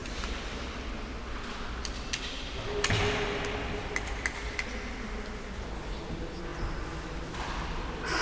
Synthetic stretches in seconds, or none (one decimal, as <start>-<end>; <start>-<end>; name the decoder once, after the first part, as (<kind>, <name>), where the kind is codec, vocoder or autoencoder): none